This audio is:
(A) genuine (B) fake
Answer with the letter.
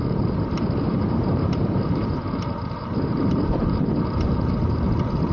B